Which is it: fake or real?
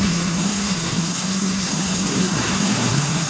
fake